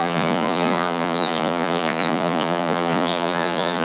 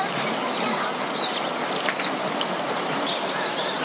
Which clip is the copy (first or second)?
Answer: first